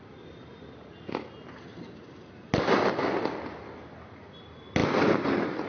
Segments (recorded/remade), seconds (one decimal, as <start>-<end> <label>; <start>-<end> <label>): 0.0-5.7 recorded

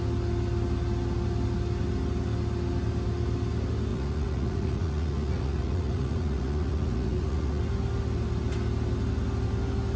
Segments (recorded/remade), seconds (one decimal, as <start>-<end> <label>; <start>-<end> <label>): 0.0-3.9 recorded; 3.9-7.6 remade; 7.6-10.0 recorded